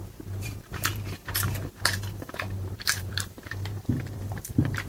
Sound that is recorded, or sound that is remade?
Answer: remade